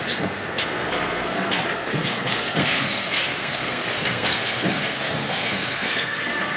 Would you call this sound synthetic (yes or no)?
yes